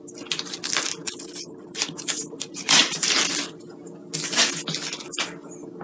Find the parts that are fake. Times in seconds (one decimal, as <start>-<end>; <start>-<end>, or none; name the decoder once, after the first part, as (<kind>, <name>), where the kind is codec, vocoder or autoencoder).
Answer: 1.0-3.2 (vocoder, BigVGAN v2)